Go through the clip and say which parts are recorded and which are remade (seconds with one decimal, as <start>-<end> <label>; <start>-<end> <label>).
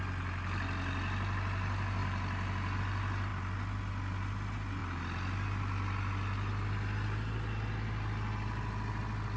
0.0-9.4 recorded